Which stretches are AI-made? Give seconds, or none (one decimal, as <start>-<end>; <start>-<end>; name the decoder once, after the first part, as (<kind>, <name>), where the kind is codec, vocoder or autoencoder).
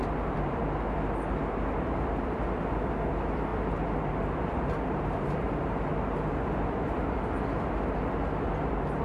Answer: 0.0-0.6 (vocoder, BigVGAN v2); 3.5-5.8